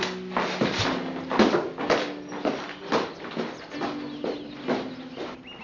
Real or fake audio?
real